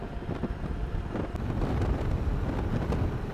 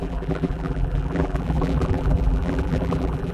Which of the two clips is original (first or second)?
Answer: first